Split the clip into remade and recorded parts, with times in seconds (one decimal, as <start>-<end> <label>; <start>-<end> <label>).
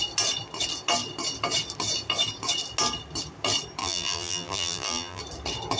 0.0-3.8 recorded; 3.8-5.2 remade; 5.2-5.8 recorded